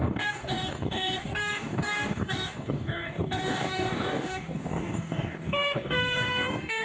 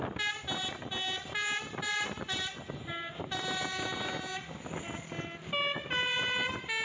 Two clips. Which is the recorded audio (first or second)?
second